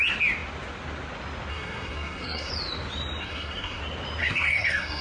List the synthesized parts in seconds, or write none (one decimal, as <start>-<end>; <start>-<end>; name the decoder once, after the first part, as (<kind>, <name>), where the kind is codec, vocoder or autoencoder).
1.5-2.5 (codec, SNAC); 3.2-3.8; 4.2-5.0